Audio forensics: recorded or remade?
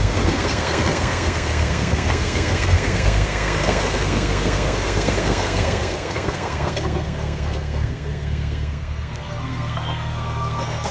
remade